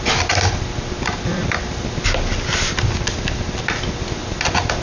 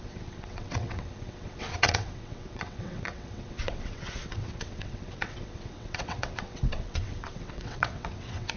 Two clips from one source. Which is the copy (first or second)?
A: second